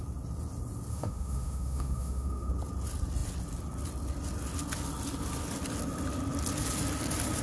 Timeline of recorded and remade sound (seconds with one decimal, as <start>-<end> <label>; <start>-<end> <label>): 0.0-0.9 recorded; 0.9-2.5 remade; 2.5-7.4 recorded